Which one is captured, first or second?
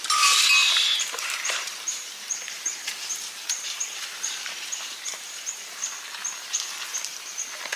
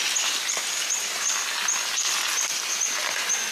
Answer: second